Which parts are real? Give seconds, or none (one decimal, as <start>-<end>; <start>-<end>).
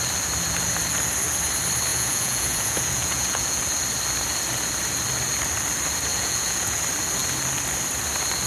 0.0-1.9; 3.6-6.1; 6.8-8.5